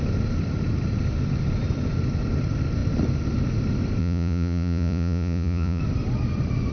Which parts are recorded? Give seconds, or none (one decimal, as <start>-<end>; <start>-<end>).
0.0-4.0; 5.8-6.7